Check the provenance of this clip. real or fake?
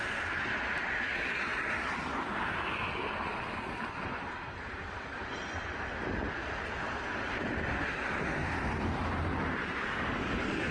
real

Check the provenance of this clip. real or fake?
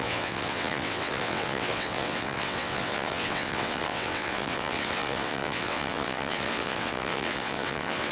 fake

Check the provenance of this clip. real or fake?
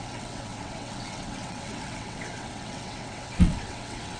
fake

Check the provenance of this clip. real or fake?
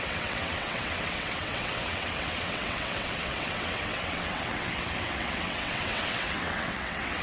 fake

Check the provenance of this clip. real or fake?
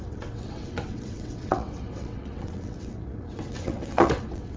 fake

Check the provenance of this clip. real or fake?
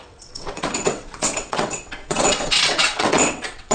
fake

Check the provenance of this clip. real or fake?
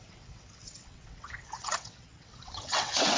fake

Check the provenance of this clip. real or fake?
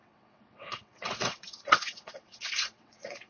fake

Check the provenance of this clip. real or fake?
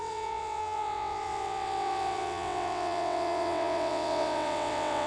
fake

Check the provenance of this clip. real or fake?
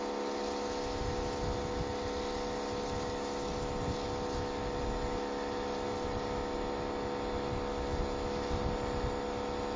real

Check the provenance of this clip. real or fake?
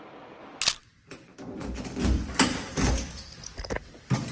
real